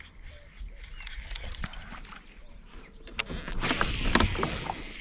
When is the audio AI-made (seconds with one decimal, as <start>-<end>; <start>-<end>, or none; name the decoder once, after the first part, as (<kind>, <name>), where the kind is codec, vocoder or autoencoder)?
2.4-3.2 (vocoder, BigVGAN v2)

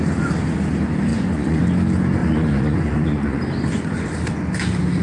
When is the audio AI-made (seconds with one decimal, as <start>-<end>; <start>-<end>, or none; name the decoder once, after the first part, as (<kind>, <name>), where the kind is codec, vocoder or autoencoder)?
1.1-1.6 (vocoder, Vocos); 2.2-3.4

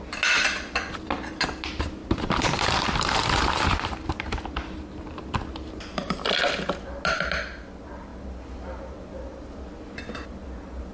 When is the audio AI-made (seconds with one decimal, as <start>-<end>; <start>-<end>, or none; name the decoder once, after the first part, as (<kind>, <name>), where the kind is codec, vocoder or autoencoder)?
2.0-6.1 (vocoder, BigVGAN v2)

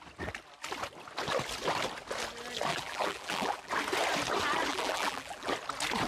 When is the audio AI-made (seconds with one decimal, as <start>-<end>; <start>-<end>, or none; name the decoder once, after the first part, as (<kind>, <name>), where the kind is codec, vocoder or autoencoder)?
2.7-3.7 (vocoder, BigVGAN v2); 4.7-5.5